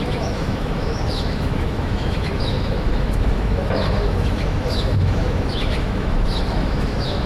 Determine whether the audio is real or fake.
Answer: fake